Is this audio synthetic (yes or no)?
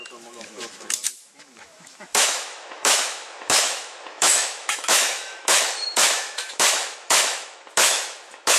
yes